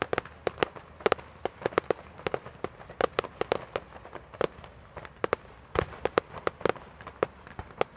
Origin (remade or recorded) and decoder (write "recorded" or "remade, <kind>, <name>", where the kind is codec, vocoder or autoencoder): remade, vocoder, BigVGAN v2